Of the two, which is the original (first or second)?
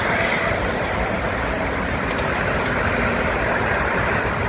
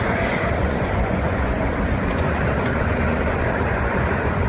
first